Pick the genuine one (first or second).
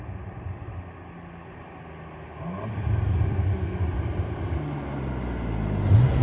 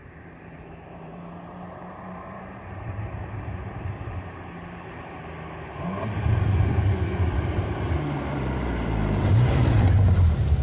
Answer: first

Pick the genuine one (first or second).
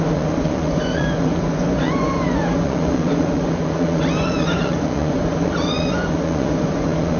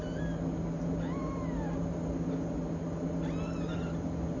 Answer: second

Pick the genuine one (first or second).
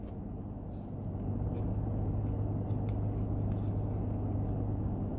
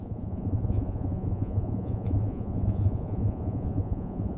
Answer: first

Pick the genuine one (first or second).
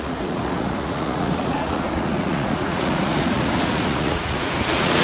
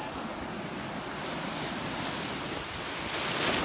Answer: second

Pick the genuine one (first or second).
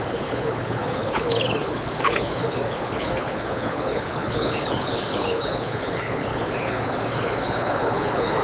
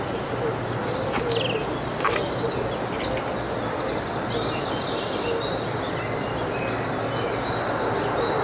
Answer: second